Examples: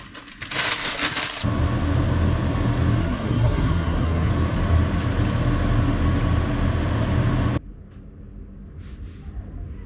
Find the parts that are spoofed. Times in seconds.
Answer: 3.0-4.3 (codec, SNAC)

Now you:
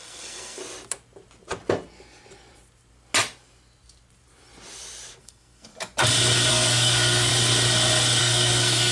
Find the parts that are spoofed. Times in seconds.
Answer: 0.0-0.6 (codec, SNAC); 5.2-5.7; 6.5-7.3; 8.2-8.9